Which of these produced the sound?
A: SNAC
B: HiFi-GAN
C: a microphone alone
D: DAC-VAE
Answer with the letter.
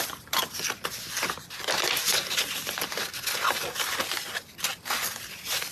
C